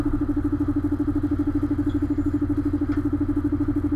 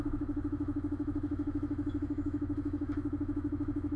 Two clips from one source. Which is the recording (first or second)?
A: first